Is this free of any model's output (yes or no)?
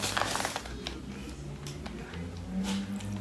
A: yes